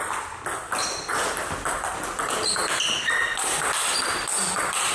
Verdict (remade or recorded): recorded